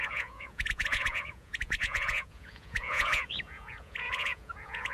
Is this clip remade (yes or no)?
yes